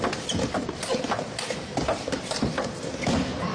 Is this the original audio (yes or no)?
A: yes